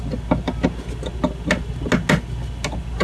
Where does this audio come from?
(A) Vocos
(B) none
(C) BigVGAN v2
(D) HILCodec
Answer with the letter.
B